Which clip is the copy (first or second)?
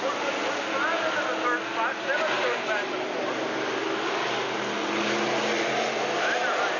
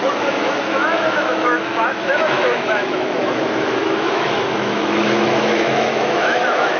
second